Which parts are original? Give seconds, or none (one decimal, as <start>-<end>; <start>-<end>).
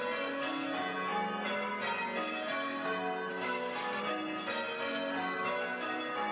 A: 0.0-3.3; 4.0-6.3